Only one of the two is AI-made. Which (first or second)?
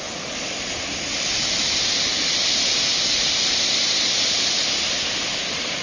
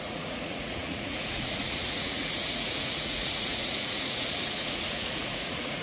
second